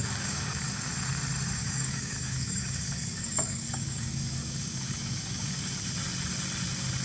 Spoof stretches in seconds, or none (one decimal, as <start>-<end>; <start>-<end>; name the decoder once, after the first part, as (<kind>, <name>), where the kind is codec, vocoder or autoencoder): 0.0-0.8 (codec, DAC); 1.6-5.8